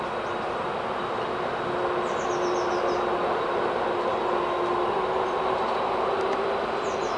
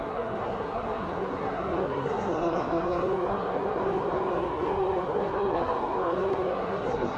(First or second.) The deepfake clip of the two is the second